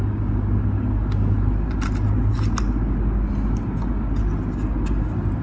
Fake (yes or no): no